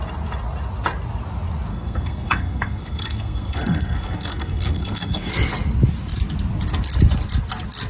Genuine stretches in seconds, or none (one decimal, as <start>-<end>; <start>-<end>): 0.0-1.7; 5.3-7.9